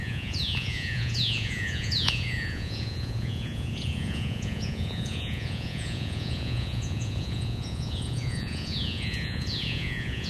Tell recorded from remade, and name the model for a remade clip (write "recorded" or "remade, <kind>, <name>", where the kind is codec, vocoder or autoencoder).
remade, vocoder, Vocos